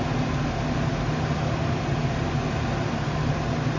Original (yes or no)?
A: yes